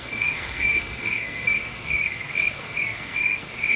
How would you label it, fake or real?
fake